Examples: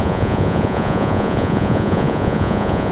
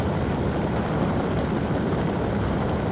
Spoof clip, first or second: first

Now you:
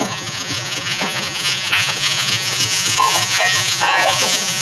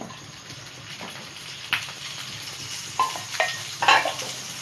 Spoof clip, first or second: first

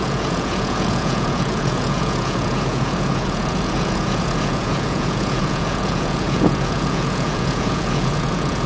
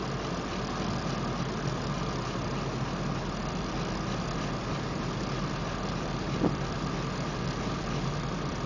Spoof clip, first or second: first